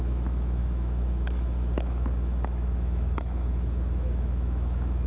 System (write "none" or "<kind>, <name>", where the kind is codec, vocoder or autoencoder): autoencoder, DAC-VAE